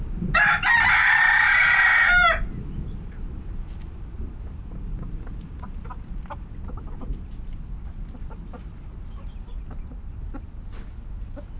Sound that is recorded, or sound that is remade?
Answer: recorded